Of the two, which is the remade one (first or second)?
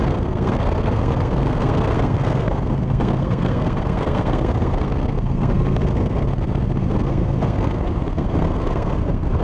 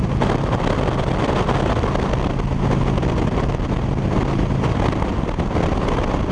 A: first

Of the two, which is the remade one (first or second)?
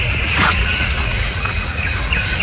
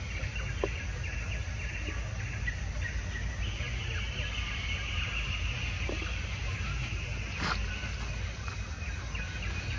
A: first